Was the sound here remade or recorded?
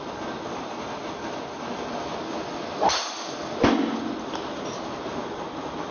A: recorded